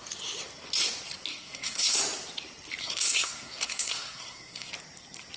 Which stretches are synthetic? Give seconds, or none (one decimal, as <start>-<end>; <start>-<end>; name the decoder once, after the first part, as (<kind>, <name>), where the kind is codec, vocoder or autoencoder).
1.3-2.0 (codec, SNAC); 2.8-4.7